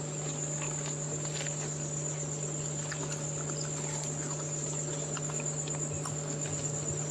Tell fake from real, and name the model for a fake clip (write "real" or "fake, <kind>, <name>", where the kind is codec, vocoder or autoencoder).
real